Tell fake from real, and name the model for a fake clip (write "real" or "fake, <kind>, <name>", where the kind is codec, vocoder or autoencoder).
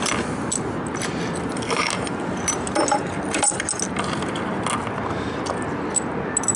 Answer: real